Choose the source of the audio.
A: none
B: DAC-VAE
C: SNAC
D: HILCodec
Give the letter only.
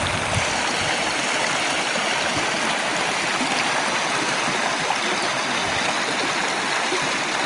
A